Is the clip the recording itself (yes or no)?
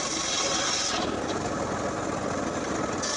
yes